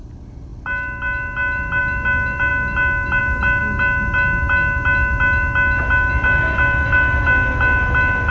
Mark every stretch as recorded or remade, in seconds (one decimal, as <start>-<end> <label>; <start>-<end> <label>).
0.0-8.3 recorded